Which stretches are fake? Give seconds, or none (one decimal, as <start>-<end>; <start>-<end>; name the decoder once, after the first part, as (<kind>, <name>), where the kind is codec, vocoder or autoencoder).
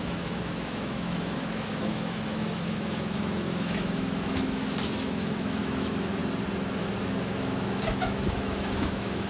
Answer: 0.0-6.2 (autoencoder, DAC-VAE); 7.0-9.3